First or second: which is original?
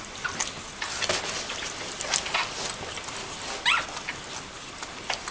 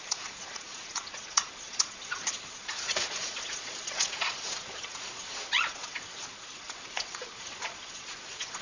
first